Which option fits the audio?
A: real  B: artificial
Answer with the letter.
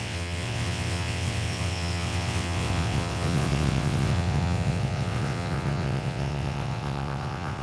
B